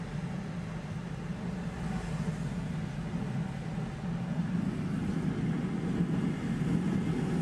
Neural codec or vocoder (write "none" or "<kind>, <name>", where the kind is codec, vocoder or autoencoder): none